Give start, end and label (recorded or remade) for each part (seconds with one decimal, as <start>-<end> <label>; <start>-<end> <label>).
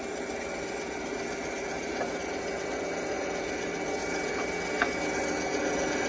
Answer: 0.0-6.1 recorded